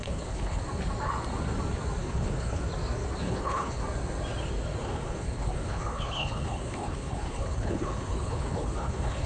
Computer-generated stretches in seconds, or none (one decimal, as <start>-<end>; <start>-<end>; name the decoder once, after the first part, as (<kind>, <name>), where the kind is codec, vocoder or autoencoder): 0.0-0.6 (codec, HILCodec); 2.0-2.6; 3.2-3.8; 4.8-9.3